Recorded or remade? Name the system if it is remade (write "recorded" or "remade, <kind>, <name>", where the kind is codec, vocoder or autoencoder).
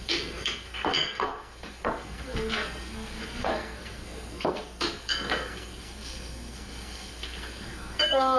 remade, codec, SNAC